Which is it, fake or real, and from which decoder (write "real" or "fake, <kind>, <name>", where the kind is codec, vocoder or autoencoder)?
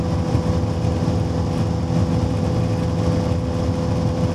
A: real